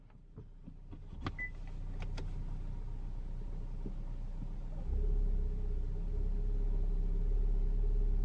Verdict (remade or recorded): recorded